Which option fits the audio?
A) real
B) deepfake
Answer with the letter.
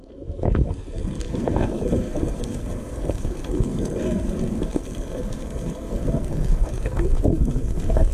B